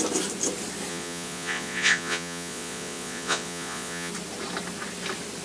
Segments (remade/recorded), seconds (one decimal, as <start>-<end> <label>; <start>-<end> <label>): 0.0-0.9 recorded; 0.9-4.1 remade; 4.1-5.4 recorded